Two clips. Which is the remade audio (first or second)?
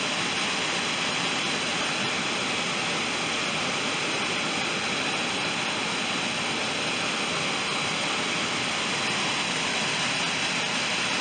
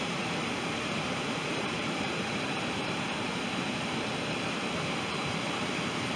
second